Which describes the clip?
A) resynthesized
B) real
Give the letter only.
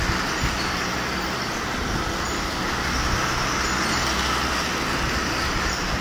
B